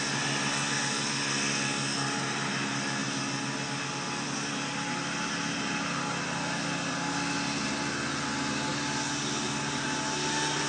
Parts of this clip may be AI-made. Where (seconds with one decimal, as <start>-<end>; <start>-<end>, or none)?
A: none